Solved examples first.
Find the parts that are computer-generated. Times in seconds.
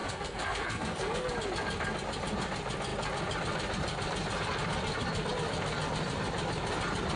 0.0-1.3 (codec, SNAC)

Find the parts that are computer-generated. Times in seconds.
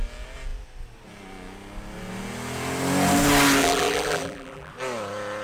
3.6-4.7 (vocoder, BigVGAN v2)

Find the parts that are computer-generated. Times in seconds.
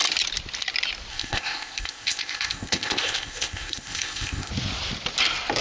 1.1-4.5 (codec, ZipCodec)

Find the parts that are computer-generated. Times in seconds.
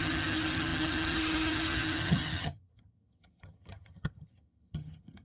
0.0-5.2 (vocoder, HiFi-GAN)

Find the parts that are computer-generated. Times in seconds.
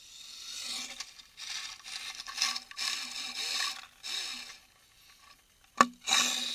none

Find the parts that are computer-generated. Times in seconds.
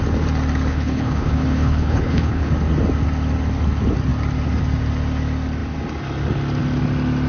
0.7-2.5 (codec, HILCodec)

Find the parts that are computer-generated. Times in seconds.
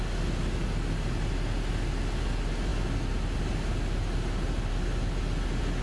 none